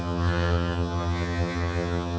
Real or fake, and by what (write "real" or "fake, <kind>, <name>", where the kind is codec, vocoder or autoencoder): fake, vocoder, HiFi-GAN